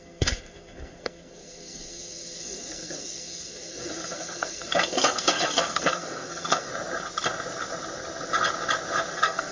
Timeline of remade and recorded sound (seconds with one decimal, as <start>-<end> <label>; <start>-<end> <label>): 0.0-6.7 remade; 6.7-9.1 recorded; 9.1-9.5 remade